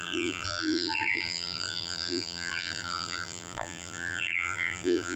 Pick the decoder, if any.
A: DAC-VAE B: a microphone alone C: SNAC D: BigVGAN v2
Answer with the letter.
D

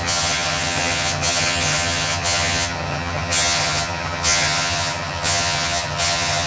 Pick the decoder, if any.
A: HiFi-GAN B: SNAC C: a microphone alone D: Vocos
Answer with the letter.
A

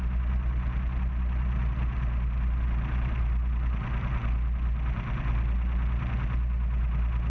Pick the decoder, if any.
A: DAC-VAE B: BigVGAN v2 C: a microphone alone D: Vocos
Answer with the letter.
C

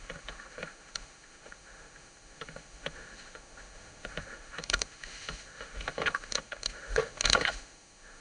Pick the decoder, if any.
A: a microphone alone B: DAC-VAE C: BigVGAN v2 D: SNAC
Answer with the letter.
B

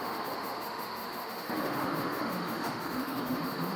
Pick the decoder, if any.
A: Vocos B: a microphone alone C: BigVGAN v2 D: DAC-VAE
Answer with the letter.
D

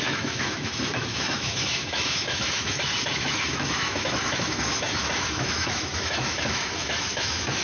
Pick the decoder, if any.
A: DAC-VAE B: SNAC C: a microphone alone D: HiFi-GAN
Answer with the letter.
A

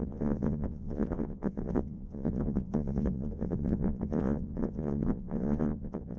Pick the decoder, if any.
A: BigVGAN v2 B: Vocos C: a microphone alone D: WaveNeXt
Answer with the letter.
B